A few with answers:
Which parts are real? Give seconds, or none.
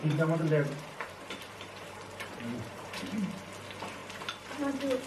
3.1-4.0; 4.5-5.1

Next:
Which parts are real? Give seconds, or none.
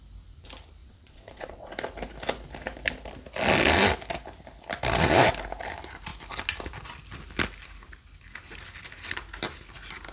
0.0-0.8; 1.7-10.1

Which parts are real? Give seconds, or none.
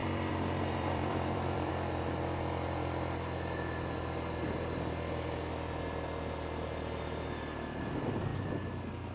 1.7-9.1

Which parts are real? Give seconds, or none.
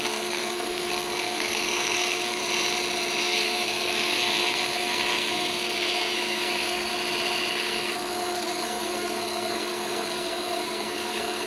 2.4-3.2; 6.9-7.5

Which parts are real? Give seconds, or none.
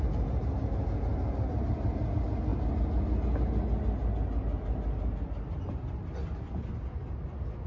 0.0-7.7